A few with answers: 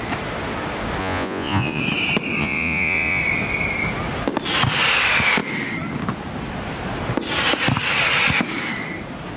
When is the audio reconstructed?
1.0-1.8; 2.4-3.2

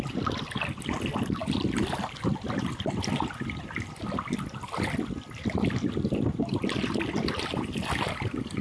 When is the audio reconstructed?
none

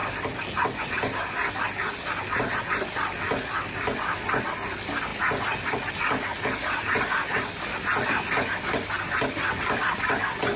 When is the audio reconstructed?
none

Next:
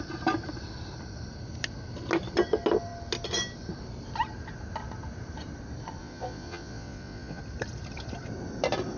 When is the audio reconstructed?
6.0-7.4

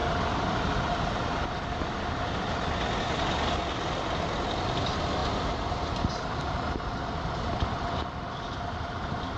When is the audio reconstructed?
none

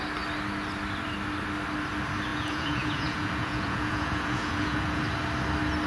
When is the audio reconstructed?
2.3-5.0